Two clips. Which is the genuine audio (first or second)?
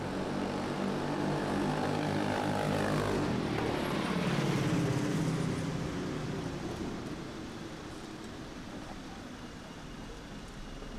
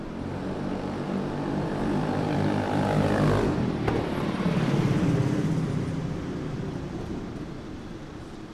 first